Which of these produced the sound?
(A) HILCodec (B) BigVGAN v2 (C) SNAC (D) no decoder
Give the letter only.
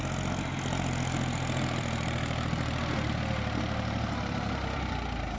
B